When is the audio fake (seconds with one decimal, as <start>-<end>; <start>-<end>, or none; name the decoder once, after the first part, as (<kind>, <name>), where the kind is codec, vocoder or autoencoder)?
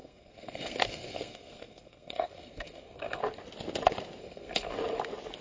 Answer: 0.0-3.2 (codec, SNAC); 4.2-4.7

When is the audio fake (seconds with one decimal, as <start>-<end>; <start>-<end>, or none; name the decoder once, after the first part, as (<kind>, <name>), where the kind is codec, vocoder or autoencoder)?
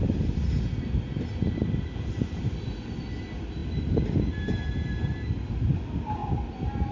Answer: none